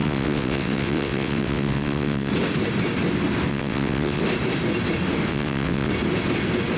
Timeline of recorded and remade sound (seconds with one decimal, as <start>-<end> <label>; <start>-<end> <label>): 0.0-2.3 remade; 2.3-3.5 recorded; 3.5-4.2 remade; 4.2-5.3 recorded; 5.3-5.9 remade; 5.9-6.8 recorded